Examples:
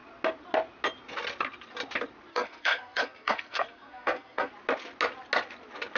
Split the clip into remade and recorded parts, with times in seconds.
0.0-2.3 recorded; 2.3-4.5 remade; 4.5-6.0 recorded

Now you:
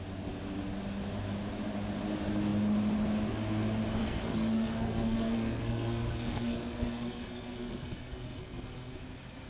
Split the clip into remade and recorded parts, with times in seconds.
0.0-4.0 recorded; 4.0-9.0 remade; 9.0-9.5 recorded

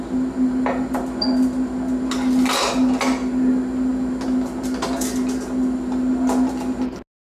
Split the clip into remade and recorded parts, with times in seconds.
0.0-7.3 recorded

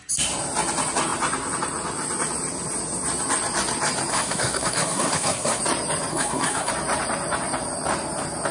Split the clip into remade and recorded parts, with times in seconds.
0.0-4.1 recorded; 4.1-5.6 remade; 5.6-6.1 recorded; 6.1-6.7 remade; 6.7-8.5 recorded

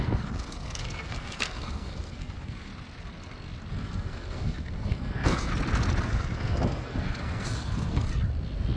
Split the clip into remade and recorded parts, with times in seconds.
0.0-2.7 remade; 2.7-3.7 recorded; 3.7-5.5 remade; 5.5-6.0 recorded; 6.0-8.1 remade; 8.1-8.8 recorded